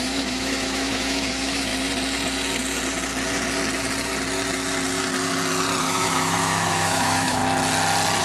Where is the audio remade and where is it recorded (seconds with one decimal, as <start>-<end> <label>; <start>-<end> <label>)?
0.0-1.7 remade; 1.7-5.8 recorded; 5.8-7.4 remade; 7.4-8.2 recorded

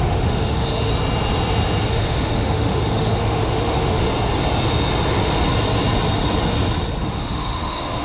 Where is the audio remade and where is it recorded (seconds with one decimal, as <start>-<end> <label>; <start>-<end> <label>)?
0.0-0.9 remade; 0.9-1.9 recorded; 1.9-4.0 remade; 4.0-7.0 recorded; 7.0-8.0 remade

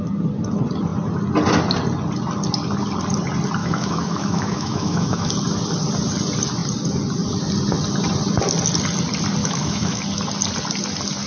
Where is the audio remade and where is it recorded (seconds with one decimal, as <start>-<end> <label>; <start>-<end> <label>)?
0.0-3.6 recorded; 3.6-5.3 remade; 5.3-9.4 recorded; 9.4-10.0 remade; 10.0-11.3 recorded